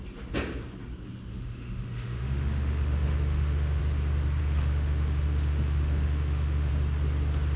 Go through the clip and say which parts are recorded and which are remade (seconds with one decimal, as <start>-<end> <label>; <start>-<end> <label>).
0.0-1.3 recorded; 1.3-3.8 remade; 3.8-4.4 recorded; 4.4-6.7 remade; 6.7-7.6 recorded